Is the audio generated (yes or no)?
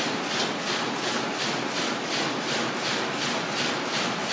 no